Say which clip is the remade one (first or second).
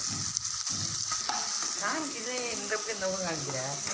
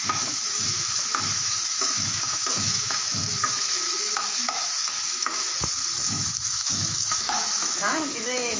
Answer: second